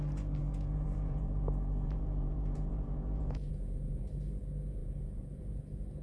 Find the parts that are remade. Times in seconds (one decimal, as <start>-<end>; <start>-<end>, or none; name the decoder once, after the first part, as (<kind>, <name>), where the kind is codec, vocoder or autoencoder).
0.4-4.0 (vocoder, Vocos); 4.8-5.4